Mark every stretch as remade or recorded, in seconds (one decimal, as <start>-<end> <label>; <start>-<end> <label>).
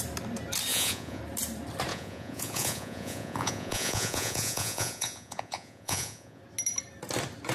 0.0-0.7 recorded; 0.7-1.2 remade; 1.2-1.9 recorded; 1.9-6.4 remade; 6.4-7.5 recorded